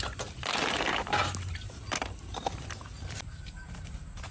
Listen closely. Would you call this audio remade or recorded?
recorded